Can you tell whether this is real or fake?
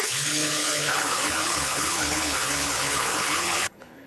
fake